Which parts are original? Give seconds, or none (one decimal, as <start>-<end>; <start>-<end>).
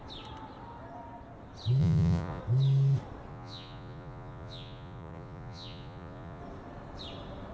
0.0-1.8; 2.4-3.3; 6.4-7.5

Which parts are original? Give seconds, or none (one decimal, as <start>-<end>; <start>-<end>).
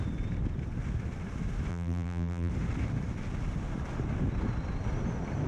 0.0-1.7; 2.5-5.5